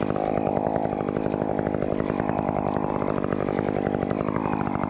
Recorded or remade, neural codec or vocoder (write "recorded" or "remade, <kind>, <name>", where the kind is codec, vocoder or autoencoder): recorded